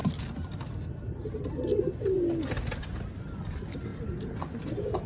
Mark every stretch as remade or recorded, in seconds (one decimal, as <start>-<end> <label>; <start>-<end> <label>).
0.0-5.1 recorded